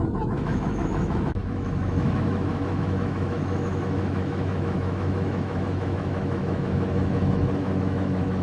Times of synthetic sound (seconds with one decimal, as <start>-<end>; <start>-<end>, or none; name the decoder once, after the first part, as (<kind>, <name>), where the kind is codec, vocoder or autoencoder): 0.0-8.4 (autoencoder, DAC-VAE)